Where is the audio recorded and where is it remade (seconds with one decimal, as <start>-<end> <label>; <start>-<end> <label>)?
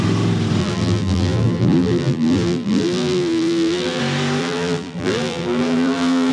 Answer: 0.0-0.6 recorded; 0.6-4.0 remade; 4.0-4.4 recorded; 4.4-6.3 remade